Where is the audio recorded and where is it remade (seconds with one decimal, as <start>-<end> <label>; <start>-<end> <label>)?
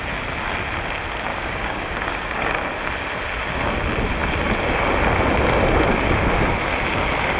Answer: 0.0-1.3 recorded; 1.3-2.5 remade; 2.5-7.4 recorded